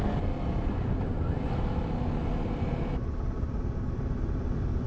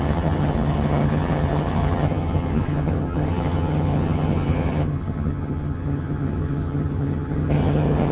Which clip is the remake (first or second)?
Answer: second